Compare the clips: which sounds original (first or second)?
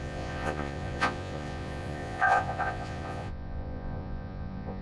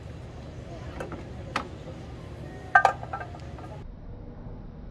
second